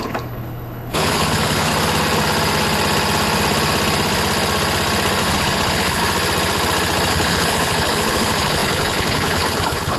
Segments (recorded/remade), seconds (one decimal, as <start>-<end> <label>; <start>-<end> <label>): 0.0-1.7 remade; 1.7-5.2 recorded; 5.2-6.0 remade; 6.0-7.1 recorded; 7.1-10.0 remade